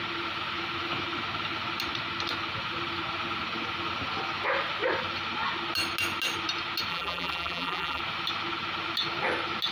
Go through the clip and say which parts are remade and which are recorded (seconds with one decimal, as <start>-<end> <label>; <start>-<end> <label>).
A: 0.0-6.9 recorded; 6.9-8.0 remade; 8.0-9.7 recorded